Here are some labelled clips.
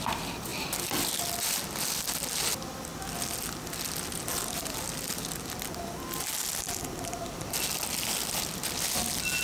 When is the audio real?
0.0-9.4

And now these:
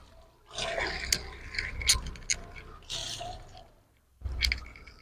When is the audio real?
0.0-3.0; 4.4-5.0

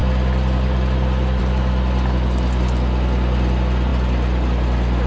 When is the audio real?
0.0-5.1

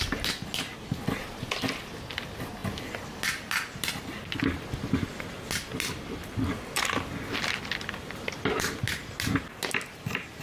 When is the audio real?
0.0-1.2; 1.8-10.4